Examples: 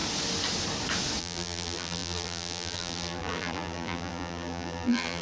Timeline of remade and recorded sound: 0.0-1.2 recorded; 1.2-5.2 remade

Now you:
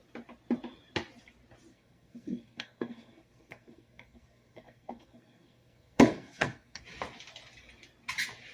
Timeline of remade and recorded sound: 0.0-1.7 recorded; 1.7-6.8 remade; 6.8-8.5 recorded

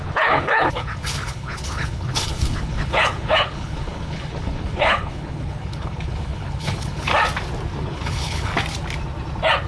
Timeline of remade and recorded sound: 0.0-7.1 remade; 7.1-7.8 recorded; 7.8-8.5 remade; 8.5-9.7 recorded

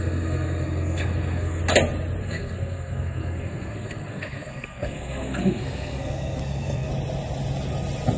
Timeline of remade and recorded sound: 0.0-1.6 remade; 1.6-2.2 recorded; 2.2-6.9 remade; 6.9-8.2 recorded

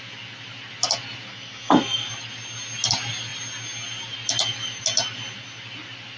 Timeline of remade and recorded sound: 0.0-1.3 recorded; 1.3-2.1 remade; 2.1-6.2 recorded

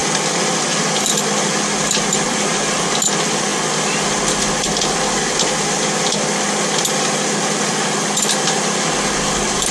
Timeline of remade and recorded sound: 0.0-9.7 recorded

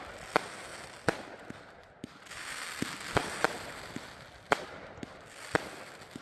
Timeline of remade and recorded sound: 0.0-6.2 recorded

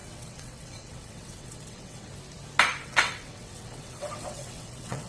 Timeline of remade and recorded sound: 0.0-2.1 remade; 2.1-2.8 recorded; 2.8-5.1 remade